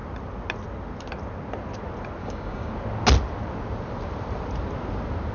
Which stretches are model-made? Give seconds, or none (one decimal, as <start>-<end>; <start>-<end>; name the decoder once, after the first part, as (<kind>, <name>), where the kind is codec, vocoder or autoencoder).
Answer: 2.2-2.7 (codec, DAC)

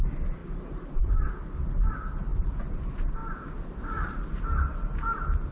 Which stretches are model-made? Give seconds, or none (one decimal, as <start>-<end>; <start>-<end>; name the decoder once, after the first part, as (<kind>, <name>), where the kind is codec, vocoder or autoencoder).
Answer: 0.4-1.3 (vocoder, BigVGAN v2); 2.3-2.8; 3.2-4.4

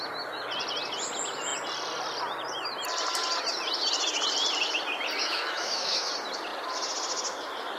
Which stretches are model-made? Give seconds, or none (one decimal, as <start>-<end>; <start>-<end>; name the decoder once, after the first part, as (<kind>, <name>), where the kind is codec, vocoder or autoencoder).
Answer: 5.2-6.1 (autoencoder, DAC-VAE)

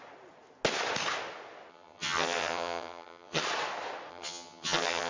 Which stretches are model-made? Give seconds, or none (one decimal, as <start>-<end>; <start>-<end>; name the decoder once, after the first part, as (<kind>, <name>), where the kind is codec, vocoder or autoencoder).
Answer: 1.7-3.4 (vocoder, HiFi-GAN); 4.1-5.1

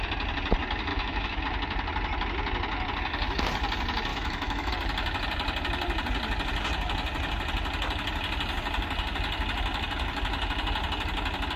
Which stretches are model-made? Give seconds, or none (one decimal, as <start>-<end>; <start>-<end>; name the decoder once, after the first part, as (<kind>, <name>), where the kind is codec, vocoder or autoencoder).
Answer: 0.9-1.4 (autoencoder, DAC-VAE); 4.1-4.7

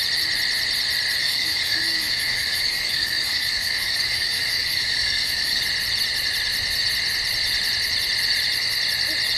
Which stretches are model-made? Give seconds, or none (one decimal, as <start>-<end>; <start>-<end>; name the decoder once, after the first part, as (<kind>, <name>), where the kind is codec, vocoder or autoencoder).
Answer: 1.2-5.6 (codec, DAC)

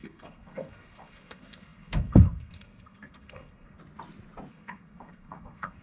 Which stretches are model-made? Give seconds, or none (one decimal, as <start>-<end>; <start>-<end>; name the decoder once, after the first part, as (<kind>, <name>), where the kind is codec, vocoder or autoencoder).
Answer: 0.0-3.8 (codec, SNAC); 4.5-5.8